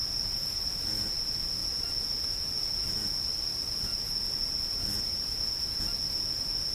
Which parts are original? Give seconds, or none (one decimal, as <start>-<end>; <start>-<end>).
0.0-6.7